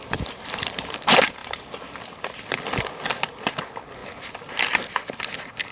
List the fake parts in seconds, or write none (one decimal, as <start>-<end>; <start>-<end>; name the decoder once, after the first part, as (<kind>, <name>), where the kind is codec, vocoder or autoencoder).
none